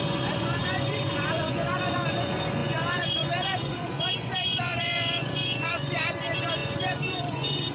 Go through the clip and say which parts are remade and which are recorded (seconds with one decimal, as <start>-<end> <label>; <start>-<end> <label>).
0.0-7.7 remade